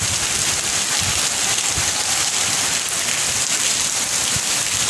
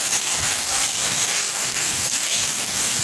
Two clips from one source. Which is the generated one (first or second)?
second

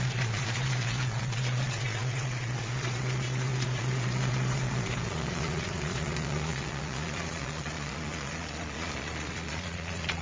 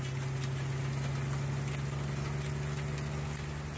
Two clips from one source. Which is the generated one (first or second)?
first